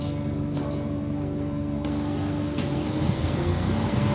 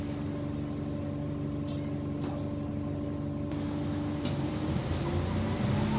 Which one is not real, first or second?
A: first